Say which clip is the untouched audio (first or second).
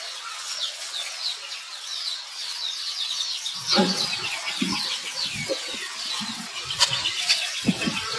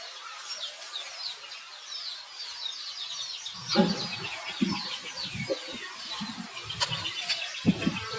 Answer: second